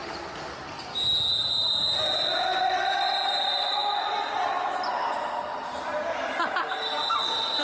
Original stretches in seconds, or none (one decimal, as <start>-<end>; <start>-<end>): 0.0-7.6